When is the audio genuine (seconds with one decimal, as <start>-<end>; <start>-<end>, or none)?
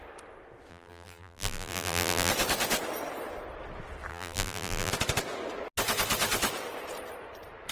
0.0-0.7; 2.3-4.1; 4.9-7.7